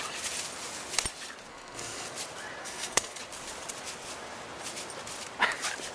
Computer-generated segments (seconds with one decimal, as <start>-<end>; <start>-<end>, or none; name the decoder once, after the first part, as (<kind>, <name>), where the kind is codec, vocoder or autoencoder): 1.5-2.1 (codec, SNAC); 2.6-3.2